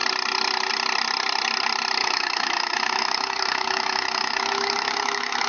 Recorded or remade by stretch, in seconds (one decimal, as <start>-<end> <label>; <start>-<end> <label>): 0.0-2.0 recorded; 2.0-5.5 remade